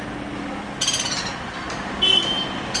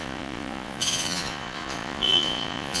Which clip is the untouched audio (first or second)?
first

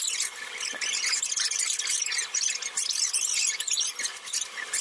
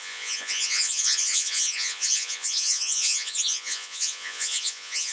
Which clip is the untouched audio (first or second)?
first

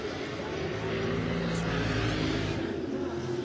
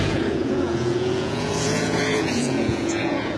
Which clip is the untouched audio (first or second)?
first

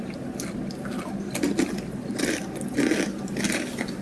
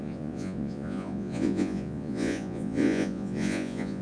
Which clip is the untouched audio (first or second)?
first